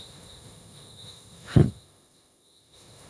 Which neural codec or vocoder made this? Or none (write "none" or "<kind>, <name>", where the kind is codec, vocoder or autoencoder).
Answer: autoencoder, DAC-VAE